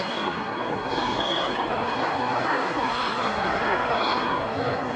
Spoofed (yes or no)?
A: yes